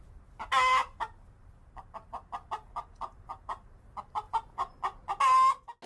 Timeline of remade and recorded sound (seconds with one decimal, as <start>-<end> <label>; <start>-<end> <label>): 0.0-0.8 recorded; 0.8-4.3 remade; 4.3-5.9 recorded